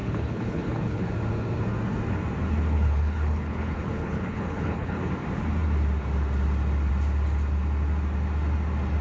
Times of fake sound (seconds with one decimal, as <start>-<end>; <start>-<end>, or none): 0.0-1.1; 2.4-5.1